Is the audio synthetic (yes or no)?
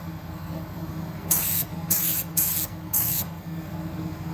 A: yes